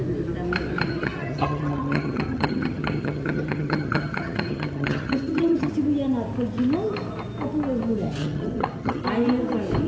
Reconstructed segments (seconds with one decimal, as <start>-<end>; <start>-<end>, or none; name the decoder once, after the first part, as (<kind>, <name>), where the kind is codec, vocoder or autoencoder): 0.9-5.7 (vocoder, HiFi-GAN); 8.2-9.0